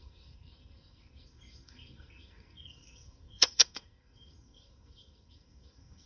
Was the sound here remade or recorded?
remade